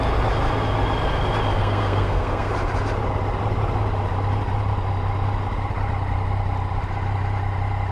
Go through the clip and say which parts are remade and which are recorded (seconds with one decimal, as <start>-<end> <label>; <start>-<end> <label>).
0.0-1.6 recorded; 1.6-2.5 remade; 2.5-7.9 recorded